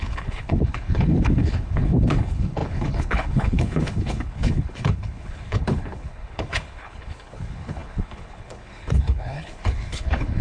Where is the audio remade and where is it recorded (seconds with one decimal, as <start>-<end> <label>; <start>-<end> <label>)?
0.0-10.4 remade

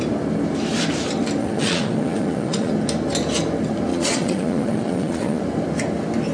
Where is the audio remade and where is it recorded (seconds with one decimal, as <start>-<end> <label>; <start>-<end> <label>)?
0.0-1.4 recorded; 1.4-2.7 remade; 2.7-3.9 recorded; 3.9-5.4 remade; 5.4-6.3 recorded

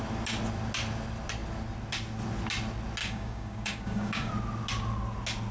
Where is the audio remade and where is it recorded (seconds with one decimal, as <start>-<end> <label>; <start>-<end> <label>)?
0.0-3.0 recorded; 3.0-4.3 remade; 4.3-5.5 recorded